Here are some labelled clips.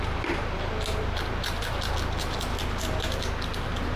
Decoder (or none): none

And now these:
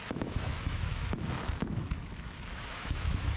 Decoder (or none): autoencoder, DAC-VAE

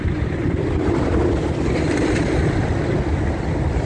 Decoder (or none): none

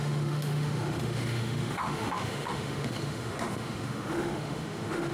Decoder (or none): autoencoder, DAC-VAE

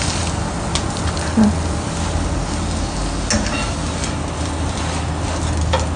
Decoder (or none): none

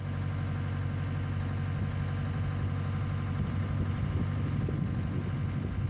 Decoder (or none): none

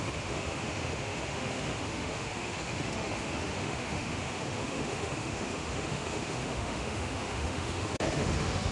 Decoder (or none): autoencoder, DAC-VAE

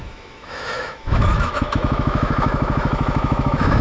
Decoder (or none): autoencoder, DAC-VAE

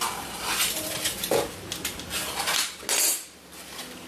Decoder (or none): none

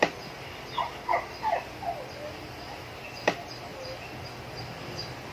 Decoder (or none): none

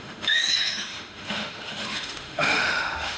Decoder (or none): autoencoder, DAC-VAE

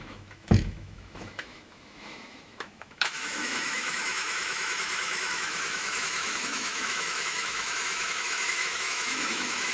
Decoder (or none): autoencoder, DAC-VAE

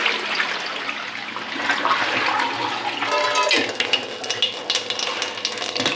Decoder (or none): none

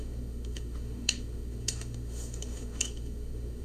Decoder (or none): autoencoder, DAC-VAE